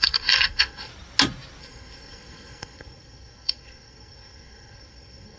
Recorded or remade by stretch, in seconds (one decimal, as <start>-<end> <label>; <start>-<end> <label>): 0.0-0.9 remade; 0.9-1.6 recorded; 1.6-5.4 remade